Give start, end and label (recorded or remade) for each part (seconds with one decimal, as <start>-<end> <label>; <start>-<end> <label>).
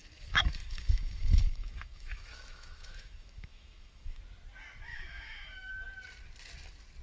0.0-4.2 remade; 4.2-4.9 recorded; 4.9-5.7 remade; 5.7-7.0 recorded